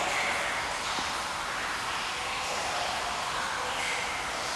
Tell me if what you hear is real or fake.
real